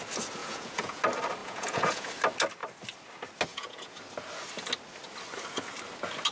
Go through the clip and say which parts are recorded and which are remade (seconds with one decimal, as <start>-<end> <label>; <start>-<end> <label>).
0.0-0.4 recorded; 0.4-1.0 remade; 1.0-1.4 recorded; 1.4-2.1 remade; 2.1-3.5 recorded; 3.5-4.0 remade; 4.0-6.3 recorded